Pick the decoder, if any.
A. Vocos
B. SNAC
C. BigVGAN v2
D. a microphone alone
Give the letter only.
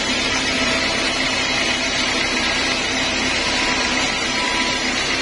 D